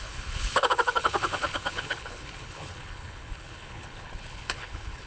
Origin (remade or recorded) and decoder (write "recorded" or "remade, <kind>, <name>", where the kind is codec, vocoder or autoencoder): remade, codec, HILCodec